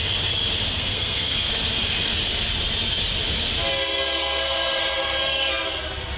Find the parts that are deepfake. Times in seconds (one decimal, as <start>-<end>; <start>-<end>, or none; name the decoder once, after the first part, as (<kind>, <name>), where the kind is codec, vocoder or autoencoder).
0.7-1.5 (codec, SNAC); 3.9-5.5